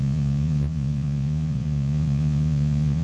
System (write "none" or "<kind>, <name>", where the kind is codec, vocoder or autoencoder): vocoder, Vocos